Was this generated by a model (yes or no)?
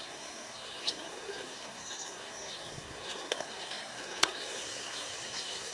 yes